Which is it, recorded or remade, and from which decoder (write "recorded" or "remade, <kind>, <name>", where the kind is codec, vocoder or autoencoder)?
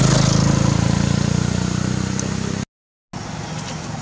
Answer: recorded